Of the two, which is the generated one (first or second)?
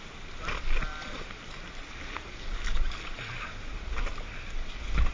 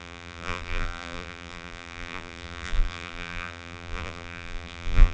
second